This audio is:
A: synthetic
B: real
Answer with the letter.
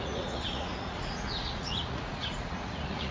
A